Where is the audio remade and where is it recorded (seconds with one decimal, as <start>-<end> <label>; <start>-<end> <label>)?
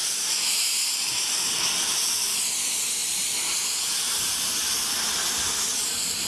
0.0-1.6 remade; 1.6-3.0 recorded; 3.0-4.3 remade; 4.3-6.3 recorded